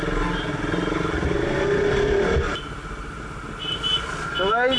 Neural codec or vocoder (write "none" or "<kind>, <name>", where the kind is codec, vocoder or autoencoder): none